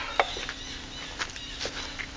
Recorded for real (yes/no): yes